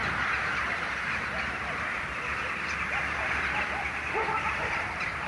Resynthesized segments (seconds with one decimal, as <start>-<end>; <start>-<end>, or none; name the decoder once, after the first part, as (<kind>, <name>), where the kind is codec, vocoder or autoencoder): none